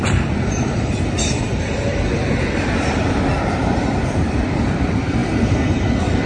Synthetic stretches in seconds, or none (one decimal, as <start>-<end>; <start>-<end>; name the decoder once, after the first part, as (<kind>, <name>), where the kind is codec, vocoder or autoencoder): 0.0-6.3 (vocoder, BigVGAN v2)